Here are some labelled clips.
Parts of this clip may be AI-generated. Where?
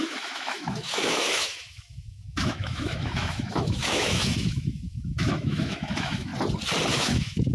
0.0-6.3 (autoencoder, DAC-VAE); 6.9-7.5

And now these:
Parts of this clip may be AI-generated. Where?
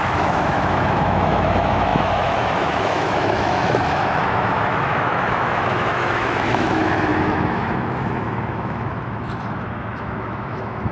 0.0-10.9 (autoencoder, DAC-VAE)